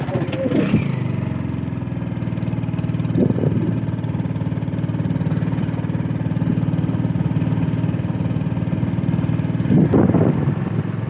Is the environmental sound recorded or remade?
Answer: recorded